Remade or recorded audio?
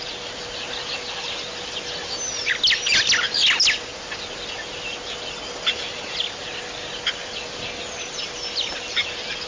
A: recorded